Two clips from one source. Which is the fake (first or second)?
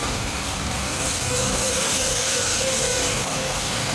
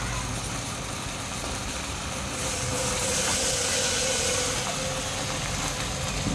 first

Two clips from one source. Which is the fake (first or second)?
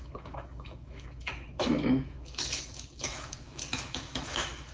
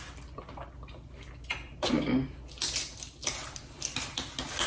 first